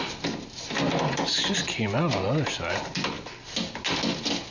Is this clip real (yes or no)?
yes